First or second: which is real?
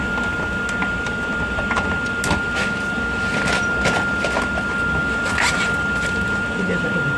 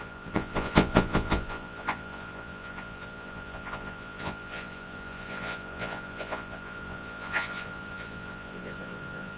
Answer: first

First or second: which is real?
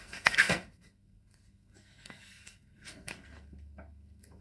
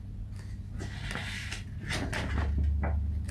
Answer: second